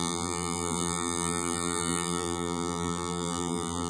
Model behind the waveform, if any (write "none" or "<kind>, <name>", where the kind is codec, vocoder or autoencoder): vocoder, BigVGAN v2